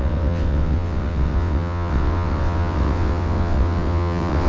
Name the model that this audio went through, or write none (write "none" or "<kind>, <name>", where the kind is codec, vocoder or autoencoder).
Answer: vocoder, WaveNeXt